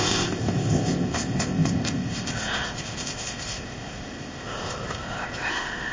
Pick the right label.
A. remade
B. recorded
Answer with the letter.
A